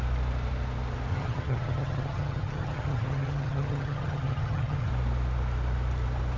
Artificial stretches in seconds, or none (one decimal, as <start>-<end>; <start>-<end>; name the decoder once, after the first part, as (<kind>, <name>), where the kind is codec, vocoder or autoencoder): 1.1-4.9 (vocoder, HiFi-GAN)